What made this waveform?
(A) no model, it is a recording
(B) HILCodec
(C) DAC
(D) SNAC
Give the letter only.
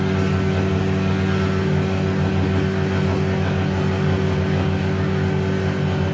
A